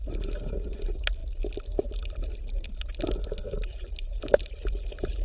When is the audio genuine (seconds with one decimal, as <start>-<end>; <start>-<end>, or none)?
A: 0.0-5.2